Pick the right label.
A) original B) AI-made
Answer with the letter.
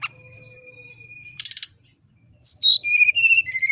B